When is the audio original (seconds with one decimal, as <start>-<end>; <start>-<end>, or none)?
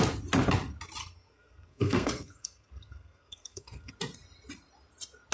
0.0-1.0; 3.9-5.3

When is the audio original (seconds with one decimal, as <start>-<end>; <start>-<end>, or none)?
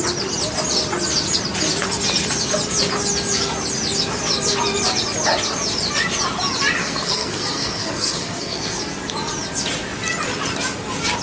0.0-6.8; 8.8-11.2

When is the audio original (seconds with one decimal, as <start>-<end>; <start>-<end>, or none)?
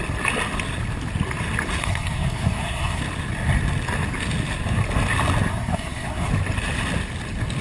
0.0-1.8; 3.0-5.5; 6.3-7.6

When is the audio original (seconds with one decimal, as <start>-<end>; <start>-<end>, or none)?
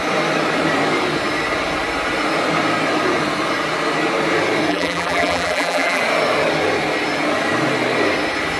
0.0-4.7; 6.0-8.6